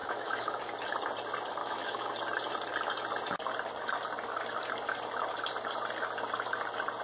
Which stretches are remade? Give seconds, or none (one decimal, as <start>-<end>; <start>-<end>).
0.0-0.6; 1.6-2.1